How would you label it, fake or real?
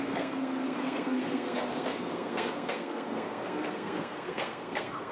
fake